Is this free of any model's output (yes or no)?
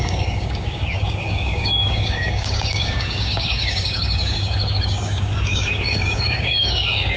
no